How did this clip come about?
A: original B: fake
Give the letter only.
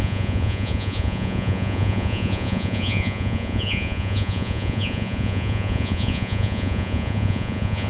B